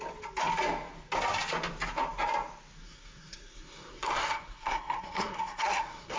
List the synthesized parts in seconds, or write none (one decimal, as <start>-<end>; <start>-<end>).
2.8-6.2